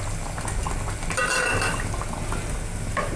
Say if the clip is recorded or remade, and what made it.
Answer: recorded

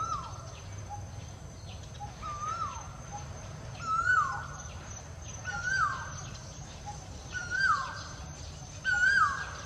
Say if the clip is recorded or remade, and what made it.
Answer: remade, vocoder, BigVGAN v2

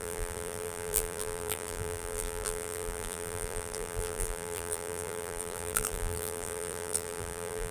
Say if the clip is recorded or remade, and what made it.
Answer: remade, vocoder, BigVGAN v2